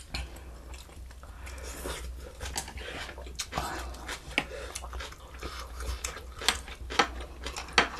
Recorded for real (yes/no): yes